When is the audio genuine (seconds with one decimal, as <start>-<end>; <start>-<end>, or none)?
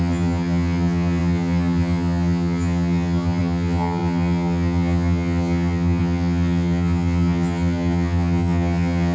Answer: none